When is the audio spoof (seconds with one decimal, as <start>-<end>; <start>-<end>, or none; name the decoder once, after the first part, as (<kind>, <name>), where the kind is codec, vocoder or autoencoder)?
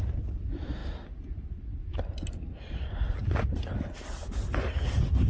none